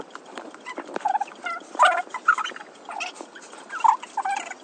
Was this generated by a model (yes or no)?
no